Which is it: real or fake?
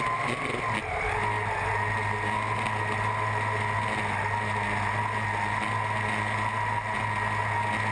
real